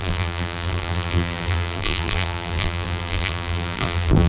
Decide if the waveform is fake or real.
fake